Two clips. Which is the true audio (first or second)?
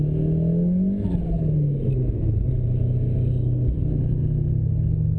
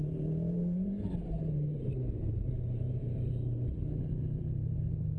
first